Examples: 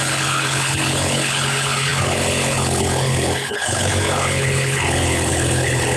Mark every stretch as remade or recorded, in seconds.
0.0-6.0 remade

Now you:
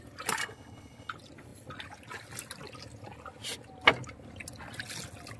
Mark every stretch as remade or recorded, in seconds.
0.0-0.4 recorded; 0.4-1.1 remade; 1.1-5.4 recorded

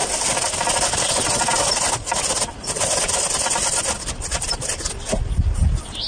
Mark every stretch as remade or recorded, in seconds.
0.0-6.1 recorded

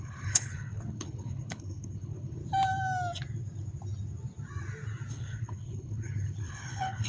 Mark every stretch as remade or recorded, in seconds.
0.0-2.4 remade; 2.4-5.1 recorded; 5.1-7.1 remade

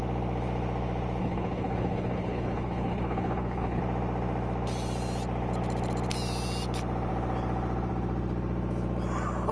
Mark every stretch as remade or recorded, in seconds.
0.0-1.2 recorded; 1.2-3.8 remade; 3.8-9.5 recorded

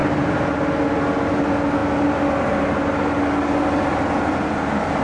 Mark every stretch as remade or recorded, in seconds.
0.0-5.0 recorded

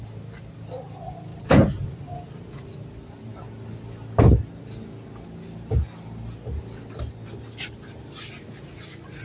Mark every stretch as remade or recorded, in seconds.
0.0-9.2 recorded